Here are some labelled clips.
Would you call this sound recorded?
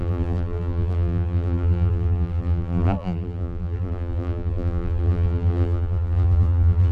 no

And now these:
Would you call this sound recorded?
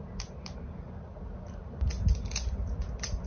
yes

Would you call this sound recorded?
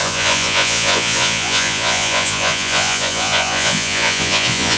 no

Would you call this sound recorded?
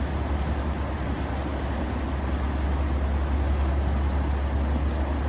yes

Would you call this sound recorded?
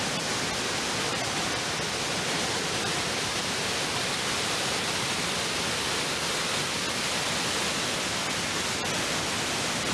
yes